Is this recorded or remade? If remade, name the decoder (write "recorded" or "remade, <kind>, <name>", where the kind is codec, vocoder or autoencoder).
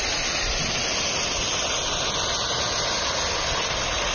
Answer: recorded